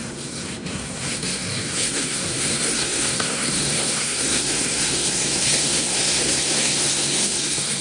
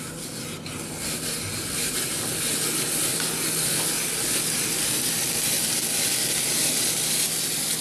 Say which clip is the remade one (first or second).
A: first